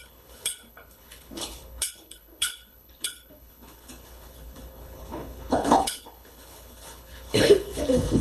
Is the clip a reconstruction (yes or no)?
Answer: yes